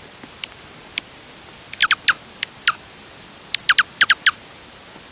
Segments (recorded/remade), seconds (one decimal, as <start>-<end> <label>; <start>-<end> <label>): 0.0-5.1 recorded